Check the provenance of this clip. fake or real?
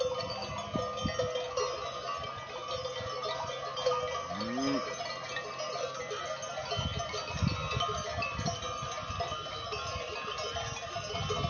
real